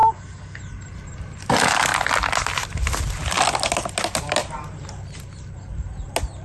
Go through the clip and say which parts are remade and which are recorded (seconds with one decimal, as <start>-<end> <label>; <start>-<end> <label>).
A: 0.0-0.6 remade; 0.6-6.4 recorded